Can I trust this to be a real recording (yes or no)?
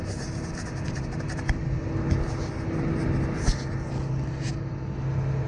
yes